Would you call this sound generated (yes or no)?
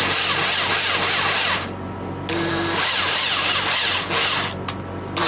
no